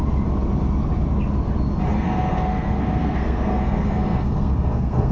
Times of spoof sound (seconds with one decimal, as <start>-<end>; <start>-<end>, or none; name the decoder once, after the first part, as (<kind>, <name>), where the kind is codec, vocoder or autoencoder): 1.9-5.1 (codec, SNAC)